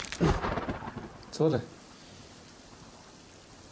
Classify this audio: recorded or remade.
remade